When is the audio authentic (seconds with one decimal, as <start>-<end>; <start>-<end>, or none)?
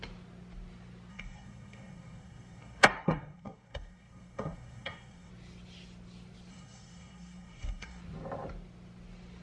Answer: 0.0-1.1; 5.3-6.5; 8.0-9.4